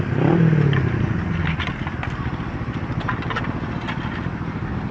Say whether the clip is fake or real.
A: real